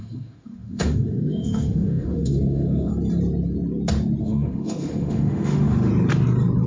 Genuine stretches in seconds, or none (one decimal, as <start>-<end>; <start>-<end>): 2.9-4.2; 5.9-6.7